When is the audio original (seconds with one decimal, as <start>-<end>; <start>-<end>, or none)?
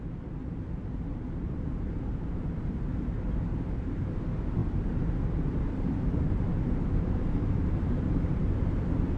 0.0-1.1; 2.9-4.6; 8.5-9.2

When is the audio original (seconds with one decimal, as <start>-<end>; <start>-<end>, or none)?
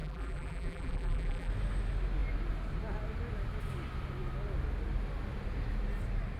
1.5-6.4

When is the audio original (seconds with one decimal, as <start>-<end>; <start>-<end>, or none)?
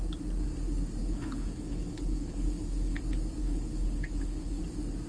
0.0-1.0; 3.0-3.4; 4.6-5.1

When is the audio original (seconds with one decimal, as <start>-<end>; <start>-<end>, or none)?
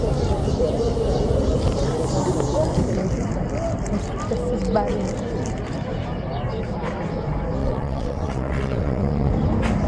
0.0-7.6; 9.3-9.9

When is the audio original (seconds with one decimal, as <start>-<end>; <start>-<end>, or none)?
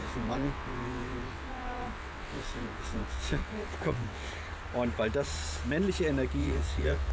4.3-6.4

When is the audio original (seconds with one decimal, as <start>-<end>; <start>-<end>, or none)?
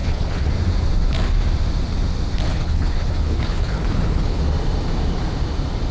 0.5-2.5; 4.4-5.9